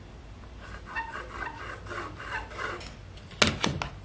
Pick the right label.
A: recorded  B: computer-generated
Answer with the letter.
A